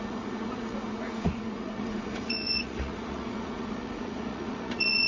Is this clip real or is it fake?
fake